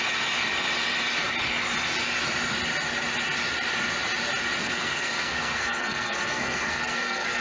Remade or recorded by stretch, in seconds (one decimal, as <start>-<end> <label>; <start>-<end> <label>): 0.0-4.6 recorded; 4.6-7.4 remade

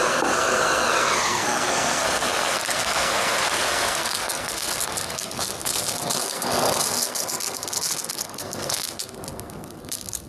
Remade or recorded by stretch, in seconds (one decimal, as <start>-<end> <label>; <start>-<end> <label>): 0.0-10.3 remade